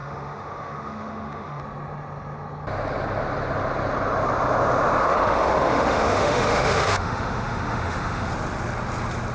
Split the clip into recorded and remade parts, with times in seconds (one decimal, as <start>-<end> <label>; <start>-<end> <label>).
0.0-1.6 remade; 1.6-5.0 recorded; 5.0-8.3 remade; 8.3-9.3 recorded